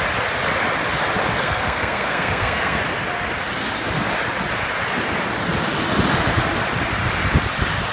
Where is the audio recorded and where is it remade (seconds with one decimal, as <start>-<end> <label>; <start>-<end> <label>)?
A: 0.0-1.4 recorded; 1.4-2.8 remade; 2.8-7.9 recorded